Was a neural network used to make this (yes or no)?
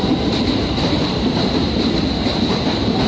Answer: yes